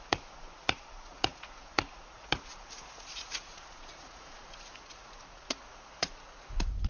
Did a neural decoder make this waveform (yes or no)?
yes